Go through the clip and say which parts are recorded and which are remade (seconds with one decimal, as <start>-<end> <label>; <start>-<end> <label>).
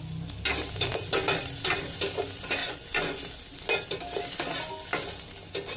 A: 0.0-2.6 recorded; 2.6-3.2 remade; 3.2-5.8 recorded